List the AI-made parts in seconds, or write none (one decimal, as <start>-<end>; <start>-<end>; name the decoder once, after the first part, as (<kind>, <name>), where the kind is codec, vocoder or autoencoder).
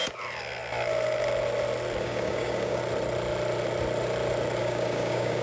2.0-2.8 (codec, DAC); 4.6-5.4